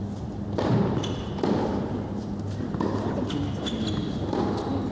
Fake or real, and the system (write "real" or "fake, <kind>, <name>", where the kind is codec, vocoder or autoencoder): real